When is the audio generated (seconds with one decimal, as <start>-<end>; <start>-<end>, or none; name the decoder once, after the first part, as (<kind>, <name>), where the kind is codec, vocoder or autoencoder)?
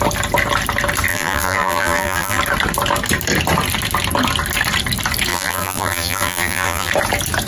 1.1-2.4 (vocoder, BigVGAN v2); 5.3-6.9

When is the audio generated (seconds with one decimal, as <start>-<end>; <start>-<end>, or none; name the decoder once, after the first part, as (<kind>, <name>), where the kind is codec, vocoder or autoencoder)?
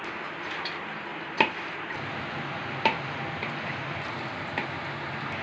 1.1-4.3 (vocoder, BigVGAN v2)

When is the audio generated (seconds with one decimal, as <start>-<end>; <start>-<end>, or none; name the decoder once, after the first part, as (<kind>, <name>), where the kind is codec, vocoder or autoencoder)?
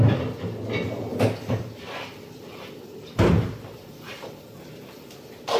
1.1-4.5 (vocoder, BigVGAN v2)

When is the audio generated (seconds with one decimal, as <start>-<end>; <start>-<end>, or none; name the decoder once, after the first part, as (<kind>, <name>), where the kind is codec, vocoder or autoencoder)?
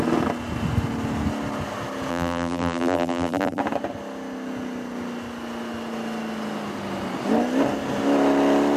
2.1-3.6 (vocoder, BigVGAN v2)